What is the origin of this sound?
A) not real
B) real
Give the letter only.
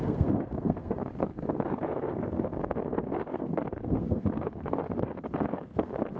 A